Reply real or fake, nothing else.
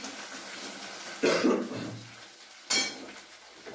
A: real